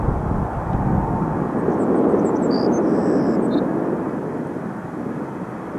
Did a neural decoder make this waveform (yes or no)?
no